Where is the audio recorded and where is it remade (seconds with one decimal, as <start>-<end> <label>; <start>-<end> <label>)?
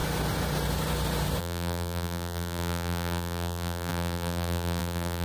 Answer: 0.0-1.4 recorded; 1.4-5.2 remade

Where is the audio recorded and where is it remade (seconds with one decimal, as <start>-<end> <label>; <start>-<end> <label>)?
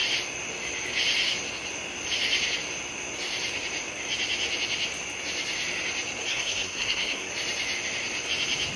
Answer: 0.0-6.3 recorded; 6.3-7.3 remade; 7.3-8.8 recorded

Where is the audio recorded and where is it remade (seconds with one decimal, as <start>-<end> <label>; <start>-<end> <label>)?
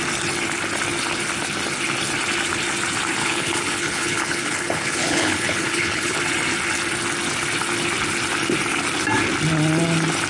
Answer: 0.0-3.2 recorded; 3.2-6.2 remade; 6.2-10.3 recorded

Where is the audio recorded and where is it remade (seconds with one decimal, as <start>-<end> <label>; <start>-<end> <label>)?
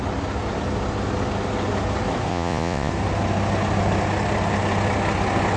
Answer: 0.0-2.3 recorded; 2.3-2.9 remade; 2.9-5.6 recorded